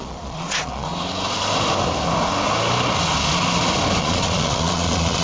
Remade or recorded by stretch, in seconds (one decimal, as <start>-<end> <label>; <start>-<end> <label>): 0.0-0.9 remade; 0.9-4.0 recorded; 4.0-5.2 remade